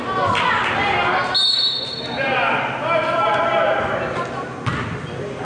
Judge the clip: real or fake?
real